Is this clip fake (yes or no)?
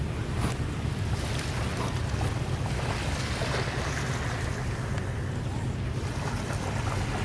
no